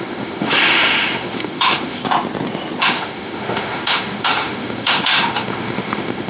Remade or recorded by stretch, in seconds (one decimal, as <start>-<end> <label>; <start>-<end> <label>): 0.0-2.0 remade; 2.0-2.8 recorded; 2.8-6.3 remade